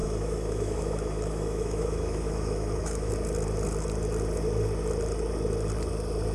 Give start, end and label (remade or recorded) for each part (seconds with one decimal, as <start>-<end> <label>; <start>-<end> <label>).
0.0-3.1 remade; 3.1-6.3 recorded